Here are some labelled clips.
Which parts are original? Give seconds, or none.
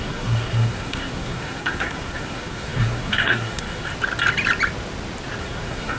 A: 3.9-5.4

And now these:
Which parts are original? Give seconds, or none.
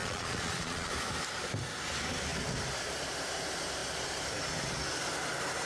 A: 0.9-5.7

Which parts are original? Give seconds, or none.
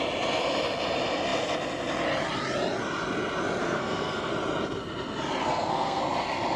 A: 0.0-3.6; 4.3-5.4; 6.0-6.6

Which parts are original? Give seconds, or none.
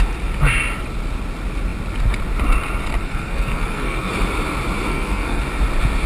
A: 0.0-3.0; 4.1-4.9; 5.4-6.1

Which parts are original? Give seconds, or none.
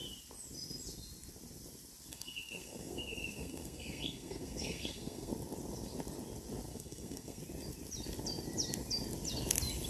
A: 0.0-2.1; 5.3-6.7; 7.4-9.9